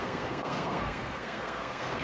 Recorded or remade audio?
remade